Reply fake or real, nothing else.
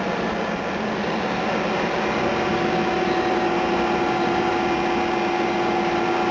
real